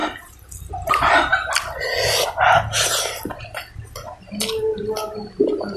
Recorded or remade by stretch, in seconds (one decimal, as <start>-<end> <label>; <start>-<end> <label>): 0.0-5.8 recorded